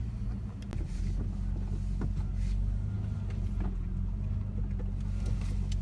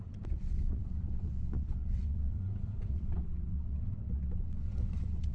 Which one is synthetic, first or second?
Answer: second